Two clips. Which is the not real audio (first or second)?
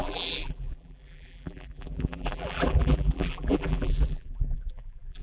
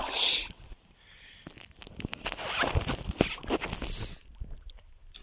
first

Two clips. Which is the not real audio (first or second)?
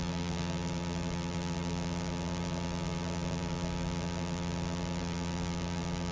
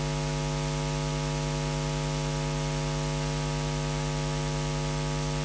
first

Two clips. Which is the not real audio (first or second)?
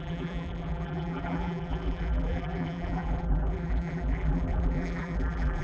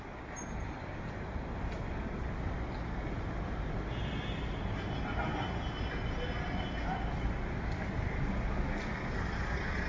first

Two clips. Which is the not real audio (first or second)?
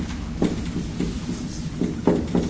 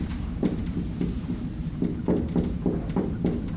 second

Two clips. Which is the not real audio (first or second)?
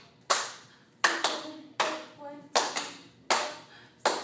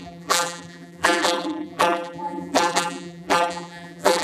second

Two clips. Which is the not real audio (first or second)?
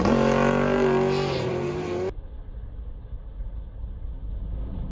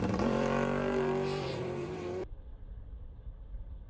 second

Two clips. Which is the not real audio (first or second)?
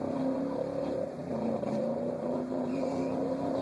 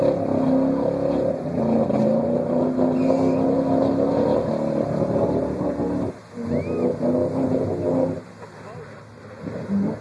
first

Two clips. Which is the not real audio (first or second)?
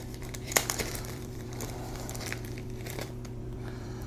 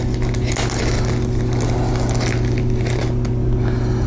first